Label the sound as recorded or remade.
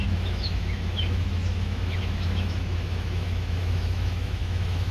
remade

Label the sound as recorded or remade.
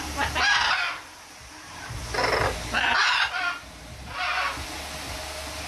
recorded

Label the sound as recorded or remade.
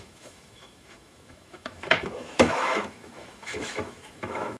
remade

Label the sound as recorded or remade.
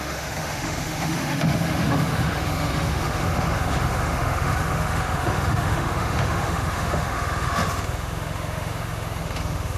remade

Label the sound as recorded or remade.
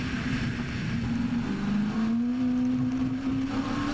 recorded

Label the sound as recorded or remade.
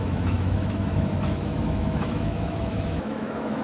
remade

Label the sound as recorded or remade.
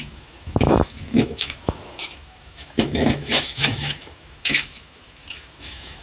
remade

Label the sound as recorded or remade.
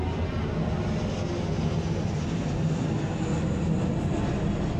recorded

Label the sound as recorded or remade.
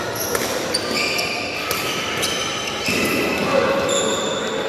recorded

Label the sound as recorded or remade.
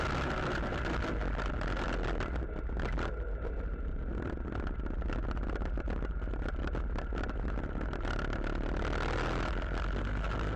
recorded